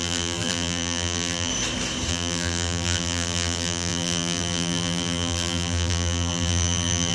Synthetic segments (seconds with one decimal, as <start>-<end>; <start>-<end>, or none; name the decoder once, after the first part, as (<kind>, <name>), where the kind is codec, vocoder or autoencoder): 0.0-1.5 (vocoder, BigVGAN v2); 2.1-7.1